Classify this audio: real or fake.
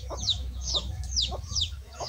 fake